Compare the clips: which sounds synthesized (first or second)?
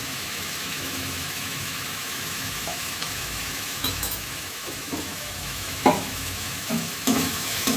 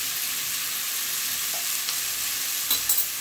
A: first